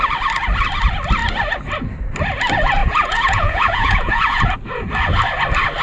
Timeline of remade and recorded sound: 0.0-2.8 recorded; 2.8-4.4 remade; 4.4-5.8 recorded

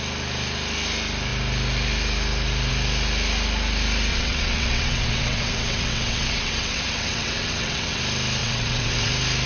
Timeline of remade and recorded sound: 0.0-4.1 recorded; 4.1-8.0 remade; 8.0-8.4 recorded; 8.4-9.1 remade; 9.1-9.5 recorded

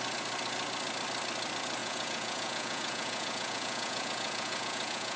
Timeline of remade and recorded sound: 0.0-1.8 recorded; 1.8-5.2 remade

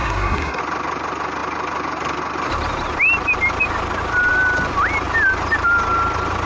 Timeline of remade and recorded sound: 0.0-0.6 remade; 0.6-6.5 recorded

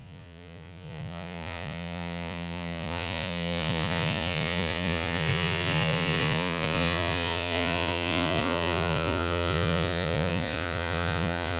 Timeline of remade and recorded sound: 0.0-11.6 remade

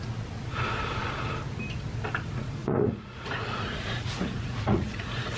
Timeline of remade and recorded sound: 0.0-2.6 recorded; 2.6-5.4 remade

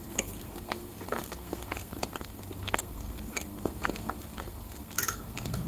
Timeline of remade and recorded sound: 0.0-5.7 remade